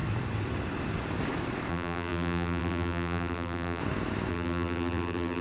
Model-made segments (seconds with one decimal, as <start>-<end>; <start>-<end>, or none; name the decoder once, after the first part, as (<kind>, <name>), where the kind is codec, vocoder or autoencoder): 1.7-3.8 (vocoder, BigVGAN v2); 4.3-5.4